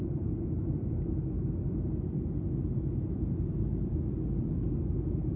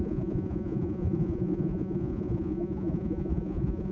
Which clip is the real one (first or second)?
first